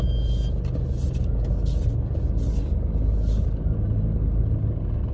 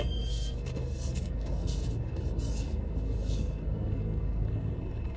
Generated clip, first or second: second